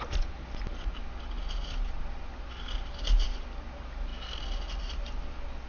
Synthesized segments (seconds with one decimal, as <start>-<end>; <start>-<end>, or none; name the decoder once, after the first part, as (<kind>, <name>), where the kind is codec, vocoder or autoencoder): none